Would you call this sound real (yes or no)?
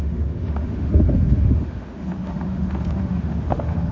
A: no